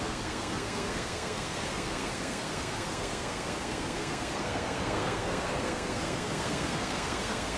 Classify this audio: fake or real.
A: fake